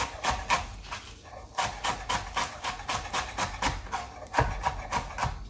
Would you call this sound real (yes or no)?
yes